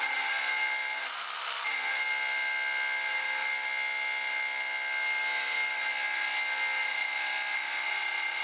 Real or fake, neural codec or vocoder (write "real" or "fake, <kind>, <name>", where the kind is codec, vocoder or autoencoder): real